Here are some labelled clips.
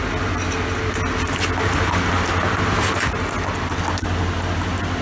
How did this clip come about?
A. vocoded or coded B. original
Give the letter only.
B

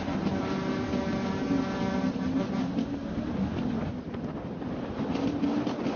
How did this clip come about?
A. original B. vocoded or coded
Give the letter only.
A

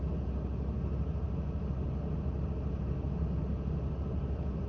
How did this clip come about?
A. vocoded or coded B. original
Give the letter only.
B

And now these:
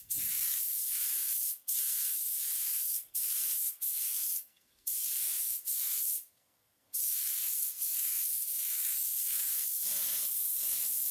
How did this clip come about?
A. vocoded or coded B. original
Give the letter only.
A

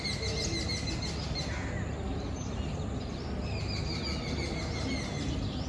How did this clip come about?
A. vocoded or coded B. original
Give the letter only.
B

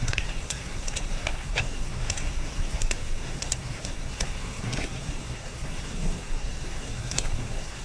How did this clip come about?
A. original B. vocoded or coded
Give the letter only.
B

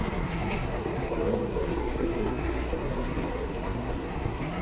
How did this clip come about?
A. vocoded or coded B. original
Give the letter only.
A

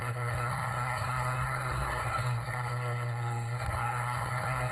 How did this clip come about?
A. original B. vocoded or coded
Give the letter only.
B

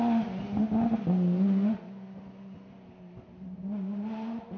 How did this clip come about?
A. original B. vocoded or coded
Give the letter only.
A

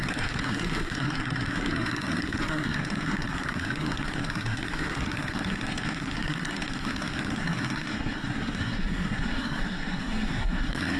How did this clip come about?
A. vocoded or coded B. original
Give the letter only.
A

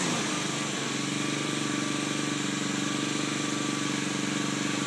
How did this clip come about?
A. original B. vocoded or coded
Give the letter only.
A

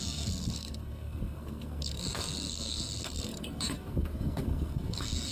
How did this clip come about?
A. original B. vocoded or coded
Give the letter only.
B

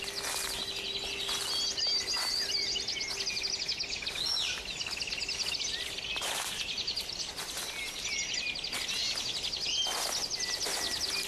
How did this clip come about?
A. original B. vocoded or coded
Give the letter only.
A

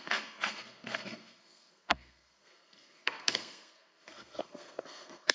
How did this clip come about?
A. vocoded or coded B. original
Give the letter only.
A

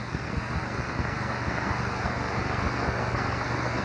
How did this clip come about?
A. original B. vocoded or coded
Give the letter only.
B